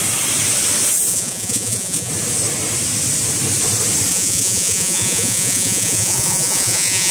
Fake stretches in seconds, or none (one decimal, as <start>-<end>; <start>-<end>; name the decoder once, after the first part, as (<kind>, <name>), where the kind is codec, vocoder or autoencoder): 1.1-2.1 (vocoder, Vocos); 4.1-7.1